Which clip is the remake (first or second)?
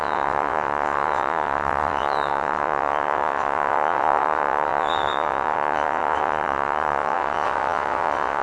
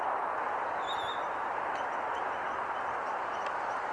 first